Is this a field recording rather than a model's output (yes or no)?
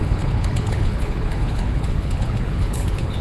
no